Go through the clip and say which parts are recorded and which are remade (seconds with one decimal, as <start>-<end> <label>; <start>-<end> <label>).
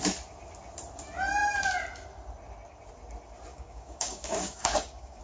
0.0-3.5 recorded; 3.5-5.2 remade